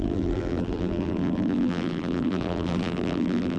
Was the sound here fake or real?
fake